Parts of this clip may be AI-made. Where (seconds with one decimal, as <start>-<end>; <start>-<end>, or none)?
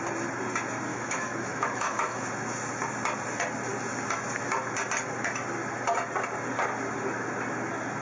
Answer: 0.9-2.3